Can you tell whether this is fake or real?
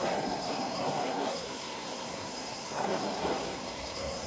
fake